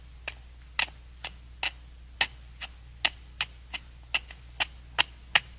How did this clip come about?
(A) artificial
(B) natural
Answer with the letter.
B